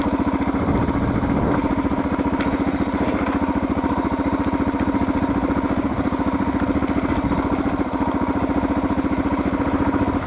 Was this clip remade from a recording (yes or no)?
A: no